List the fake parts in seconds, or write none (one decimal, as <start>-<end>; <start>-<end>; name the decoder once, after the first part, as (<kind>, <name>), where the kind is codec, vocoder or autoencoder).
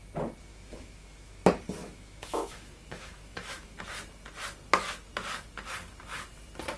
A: 0.5-1.4 (autoencoder, DAC-VAE); 1.8-3.8